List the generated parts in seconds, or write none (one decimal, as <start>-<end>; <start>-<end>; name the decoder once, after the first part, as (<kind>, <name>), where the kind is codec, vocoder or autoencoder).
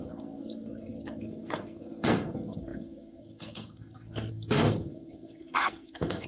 0.0-6.3 (codec, SNAC)